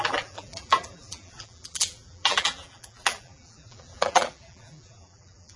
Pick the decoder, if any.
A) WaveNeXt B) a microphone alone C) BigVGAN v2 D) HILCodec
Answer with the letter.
C